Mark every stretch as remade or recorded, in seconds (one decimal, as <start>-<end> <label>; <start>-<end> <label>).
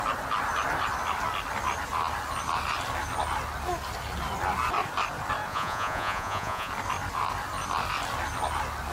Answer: 0.0-5.5 recorded; 5.5-6.7 remade; 6.7-8.9 recorded